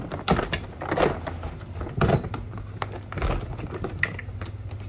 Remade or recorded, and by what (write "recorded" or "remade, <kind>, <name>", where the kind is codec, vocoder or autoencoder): recorded